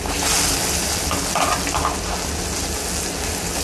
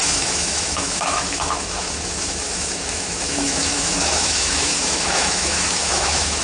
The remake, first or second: second